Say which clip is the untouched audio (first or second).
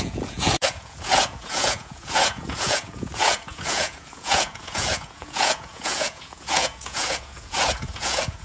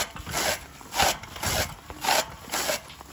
second